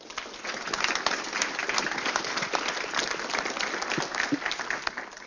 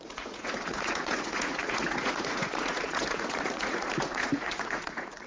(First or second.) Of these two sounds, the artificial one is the second